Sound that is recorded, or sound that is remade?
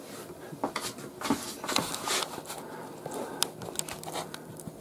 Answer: recorded